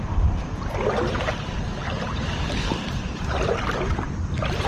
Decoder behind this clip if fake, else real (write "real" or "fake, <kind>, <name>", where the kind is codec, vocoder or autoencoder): real